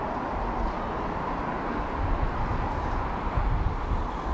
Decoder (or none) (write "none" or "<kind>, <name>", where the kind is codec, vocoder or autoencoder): none